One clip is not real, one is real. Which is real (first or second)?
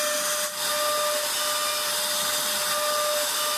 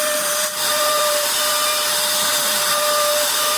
first